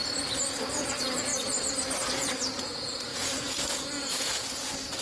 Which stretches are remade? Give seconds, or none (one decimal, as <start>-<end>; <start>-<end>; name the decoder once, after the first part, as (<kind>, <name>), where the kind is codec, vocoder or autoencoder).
0.5-1.3 (vocoder, Vocos); 2.1-5.0